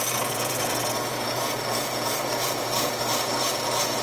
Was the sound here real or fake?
fake